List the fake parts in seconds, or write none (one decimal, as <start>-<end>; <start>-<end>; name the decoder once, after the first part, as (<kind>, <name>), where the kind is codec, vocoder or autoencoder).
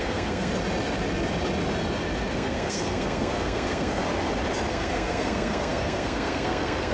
0.0-0.5 (codec, SNAC); 2.3-4.0; 4.7-6.9